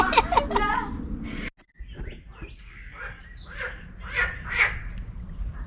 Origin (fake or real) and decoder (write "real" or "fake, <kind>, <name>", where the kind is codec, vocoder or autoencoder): real